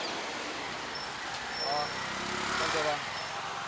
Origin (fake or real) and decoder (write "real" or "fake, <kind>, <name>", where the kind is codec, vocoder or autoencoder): real